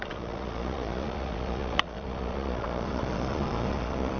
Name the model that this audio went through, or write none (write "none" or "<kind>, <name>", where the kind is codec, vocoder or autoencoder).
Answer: vocoder, Vocos